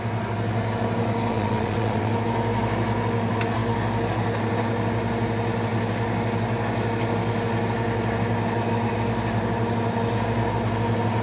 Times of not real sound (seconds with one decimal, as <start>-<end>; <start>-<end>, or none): 1.3-2.1